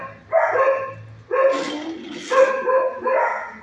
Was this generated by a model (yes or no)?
no